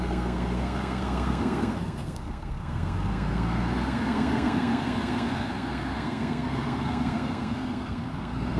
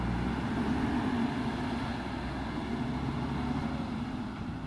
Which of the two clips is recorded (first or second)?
second